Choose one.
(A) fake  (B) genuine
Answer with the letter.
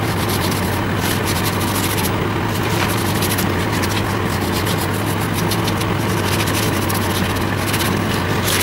B